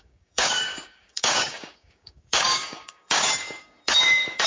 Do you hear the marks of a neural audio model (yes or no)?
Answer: yes